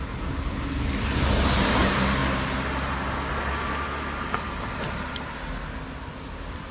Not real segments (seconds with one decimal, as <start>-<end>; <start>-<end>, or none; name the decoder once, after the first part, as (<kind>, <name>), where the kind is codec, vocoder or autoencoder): none